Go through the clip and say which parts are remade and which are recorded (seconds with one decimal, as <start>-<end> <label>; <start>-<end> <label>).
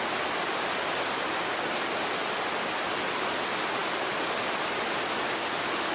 0.0-5.9 recorded